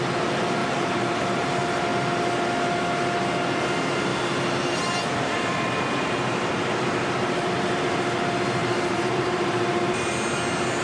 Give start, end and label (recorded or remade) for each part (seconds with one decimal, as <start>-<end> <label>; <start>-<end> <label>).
0.0-0.6 recorded; 0.6-1.5 remade; 1.5-4.1 recorded; 4.1-6.5 remade; 6.5-8.6 recorded; 8.6-10.1 remade; 10.1-10.8 recorded